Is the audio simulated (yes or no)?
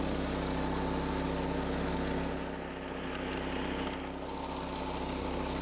no